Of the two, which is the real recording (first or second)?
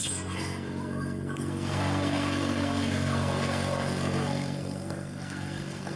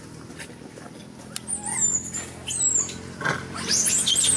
second